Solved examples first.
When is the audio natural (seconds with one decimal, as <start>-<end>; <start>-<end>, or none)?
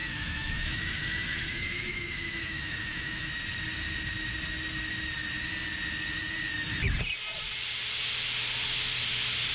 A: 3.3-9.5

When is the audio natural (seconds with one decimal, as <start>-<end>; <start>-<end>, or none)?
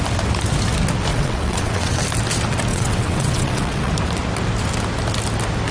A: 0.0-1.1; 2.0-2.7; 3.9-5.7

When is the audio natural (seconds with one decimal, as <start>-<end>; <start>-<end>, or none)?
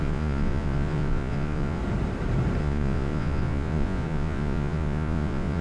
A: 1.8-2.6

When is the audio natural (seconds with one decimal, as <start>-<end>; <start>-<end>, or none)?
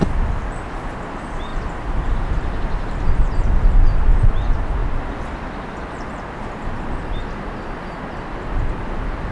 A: 0.0-9.3